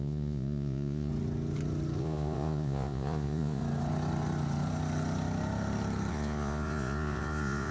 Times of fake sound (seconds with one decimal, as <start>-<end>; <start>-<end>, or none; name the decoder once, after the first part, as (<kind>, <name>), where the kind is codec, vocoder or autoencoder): 0.0-1.1 (vocoder, Vocos); 2.0-3.6; 6.1-7.7